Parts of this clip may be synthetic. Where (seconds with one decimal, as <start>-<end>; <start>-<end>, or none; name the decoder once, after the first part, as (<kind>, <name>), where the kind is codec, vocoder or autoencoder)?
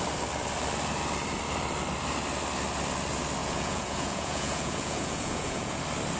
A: 3.4-5.8 (vocoder, Vocos)